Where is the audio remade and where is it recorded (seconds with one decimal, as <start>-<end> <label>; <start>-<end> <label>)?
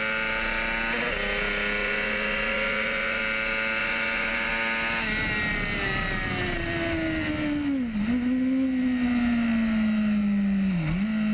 0.0-1.8 recorded; 1.8-3.2 remade; 3.2-3.8 recorded; 3.8-4.5 remade; 4.5-11.3 recorded